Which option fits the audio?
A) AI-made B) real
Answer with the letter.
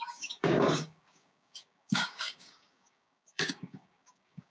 A